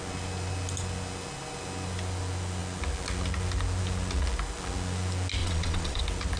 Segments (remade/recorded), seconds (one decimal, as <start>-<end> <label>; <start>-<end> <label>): 0.0-5.4 recorded; 5.4-6.0 remade; 6.0-6.4 recorded